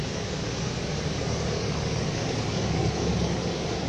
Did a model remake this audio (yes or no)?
yes